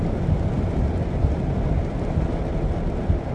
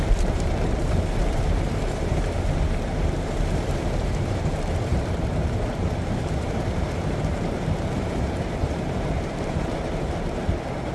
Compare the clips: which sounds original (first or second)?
first